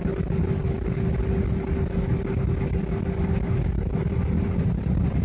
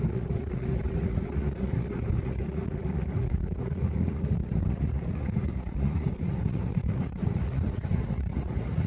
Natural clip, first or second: first